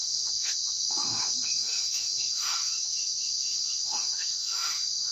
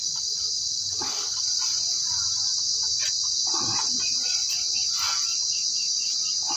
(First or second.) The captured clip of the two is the second